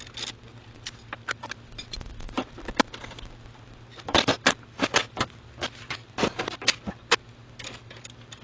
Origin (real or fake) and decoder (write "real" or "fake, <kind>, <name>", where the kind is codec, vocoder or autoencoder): real